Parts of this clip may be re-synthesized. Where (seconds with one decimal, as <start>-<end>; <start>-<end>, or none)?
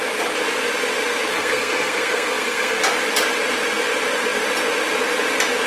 1.3-2.8